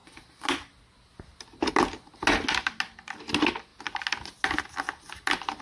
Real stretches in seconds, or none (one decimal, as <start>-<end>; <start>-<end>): 0.0-5.6